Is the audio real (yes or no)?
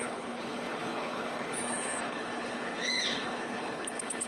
no